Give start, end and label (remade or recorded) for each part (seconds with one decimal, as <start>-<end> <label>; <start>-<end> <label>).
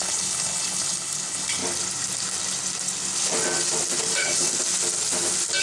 0.0-1.6 remade; 1.6-4.1 recorded; 4.1-4.5 remade; 4.5-5.6 recorded